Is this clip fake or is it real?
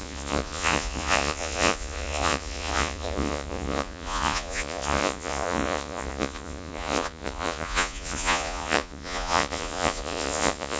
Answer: fake